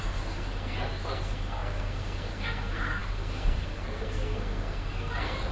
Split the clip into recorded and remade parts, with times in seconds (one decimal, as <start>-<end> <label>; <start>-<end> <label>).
0.0-5.5 remade

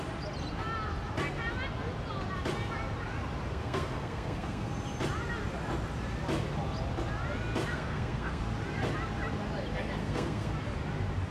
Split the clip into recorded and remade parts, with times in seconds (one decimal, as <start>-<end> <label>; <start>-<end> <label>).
0.0-3.5 recorded; 3.5-4.7 remade; 4.7-7.7 recorded; 7.7-8.4 remade; 8.4-10.0 recorded; 10.0-10.5 remade; 10.5-11.3 recorded

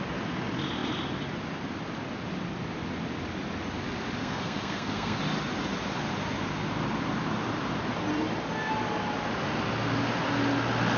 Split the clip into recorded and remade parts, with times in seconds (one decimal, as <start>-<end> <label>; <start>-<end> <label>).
0.0-4.2 recorded; 4.2-5.2 remade; 5.2-11.0 recorded

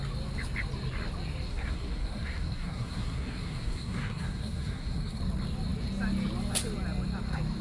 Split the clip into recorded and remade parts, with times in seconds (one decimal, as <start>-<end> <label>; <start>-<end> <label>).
0.0-1.5 recorded; 1.5-5.2 remade; 5.2-7.6 recorded

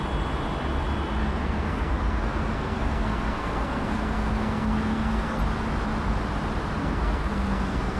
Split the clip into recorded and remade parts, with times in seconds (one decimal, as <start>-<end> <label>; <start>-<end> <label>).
0.0-1.2 recorded; 1.2-5.4 remade; 5.4-6.8 recorded; 6.8-8.0 remade

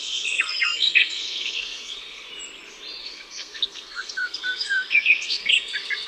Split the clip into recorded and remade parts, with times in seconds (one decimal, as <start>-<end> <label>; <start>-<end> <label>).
0.0-2.3 remade; 2.3-3.0 recorded; 3.0-6.1 remade

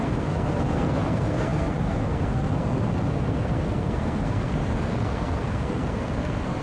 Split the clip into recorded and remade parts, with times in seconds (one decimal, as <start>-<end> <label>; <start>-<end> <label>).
0.0-6.6 remade